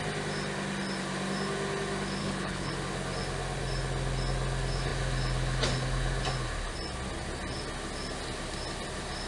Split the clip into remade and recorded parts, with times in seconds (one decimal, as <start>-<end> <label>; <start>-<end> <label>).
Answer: 0.0-2.2 recorded; 2.2-2.7 remade; 2.7-9.3 recorded